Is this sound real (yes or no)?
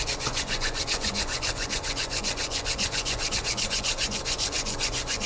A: no